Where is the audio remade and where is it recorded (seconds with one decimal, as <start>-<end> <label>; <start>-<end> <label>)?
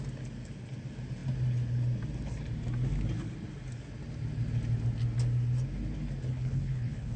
0.0-6.3 recorded; 6.3-7.2 remade